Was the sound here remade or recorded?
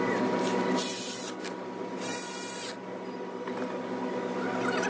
recorded